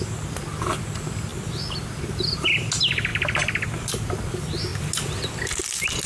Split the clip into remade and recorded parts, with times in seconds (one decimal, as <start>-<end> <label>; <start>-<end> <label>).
0.0-3.1 remade; 3.1-4.1 recorded; 4.1-4.7 remade; 4.7-6.1 recorded